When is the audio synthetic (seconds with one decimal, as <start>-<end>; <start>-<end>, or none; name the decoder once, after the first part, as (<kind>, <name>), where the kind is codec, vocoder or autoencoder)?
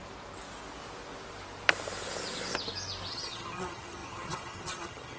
3.1-5.2 (vocoder, HiFi-GAN)